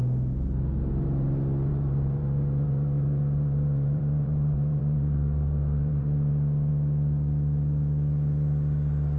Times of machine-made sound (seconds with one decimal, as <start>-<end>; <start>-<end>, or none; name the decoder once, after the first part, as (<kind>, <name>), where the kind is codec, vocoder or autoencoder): 1.7-6.3 (vocoder, BigVGAN v2)